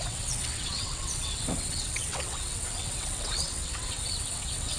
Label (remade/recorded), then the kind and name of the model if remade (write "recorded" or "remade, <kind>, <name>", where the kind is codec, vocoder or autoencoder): remade, vocoder, WaveNeXt